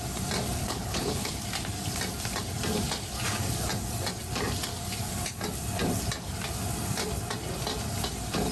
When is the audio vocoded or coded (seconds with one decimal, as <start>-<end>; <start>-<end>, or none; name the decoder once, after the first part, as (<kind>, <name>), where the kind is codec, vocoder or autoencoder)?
0.6-1.3 (codec, HILCodec)